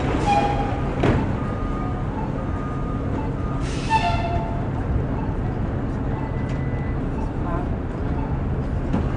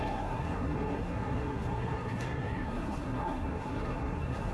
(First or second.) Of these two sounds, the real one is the first